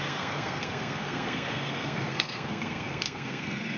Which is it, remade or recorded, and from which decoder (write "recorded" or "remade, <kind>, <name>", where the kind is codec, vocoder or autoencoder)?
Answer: remade, codec, SNAC